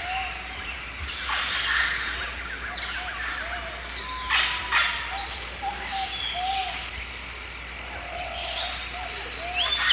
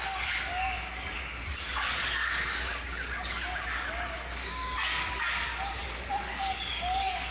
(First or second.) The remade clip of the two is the second